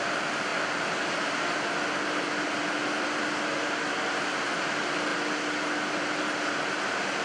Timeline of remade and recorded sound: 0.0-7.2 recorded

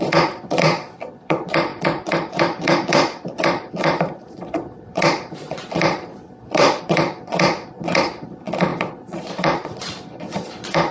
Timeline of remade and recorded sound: 0.0-10.9 remade

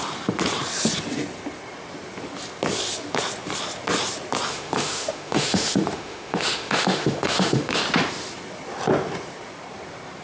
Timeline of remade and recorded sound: 0.0-4.5 recorded; 4.5-7.8 remade; 7.8-10.2 recorded